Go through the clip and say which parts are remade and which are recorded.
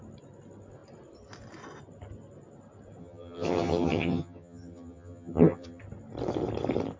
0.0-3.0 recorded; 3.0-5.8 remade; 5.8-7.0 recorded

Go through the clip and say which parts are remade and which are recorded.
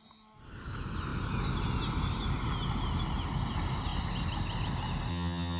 0.0-5.1 recorded; 5.1-5.6 remade